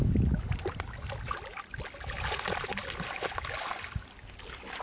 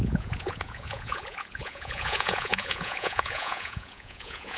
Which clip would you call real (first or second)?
first